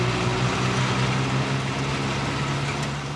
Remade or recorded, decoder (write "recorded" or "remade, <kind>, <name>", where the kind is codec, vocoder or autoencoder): recorded